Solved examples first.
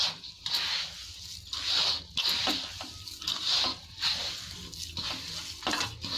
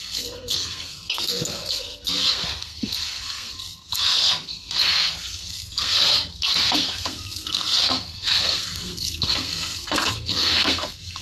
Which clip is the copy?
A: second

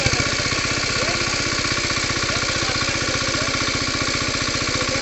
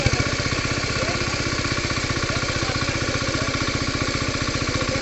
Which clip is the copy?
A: second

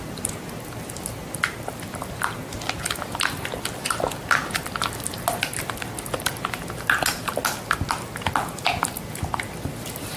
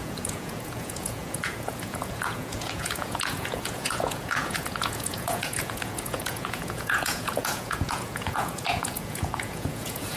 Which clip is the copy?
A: second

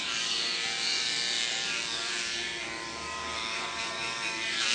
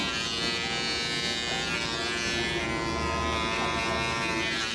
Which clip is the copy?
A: first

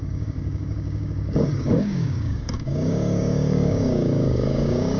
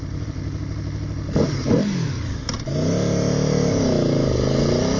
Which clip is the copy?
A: first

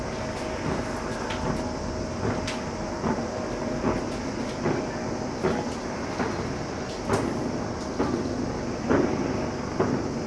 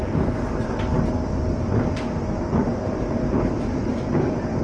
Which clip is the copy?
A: second